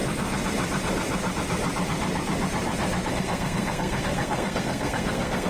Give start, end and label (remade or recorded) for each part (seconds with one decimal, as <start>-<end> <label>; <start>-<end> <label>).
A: 0.0-3.1 recorded; 3.1-5.5 remade